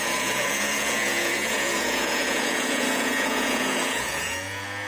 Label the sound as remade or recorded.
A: remade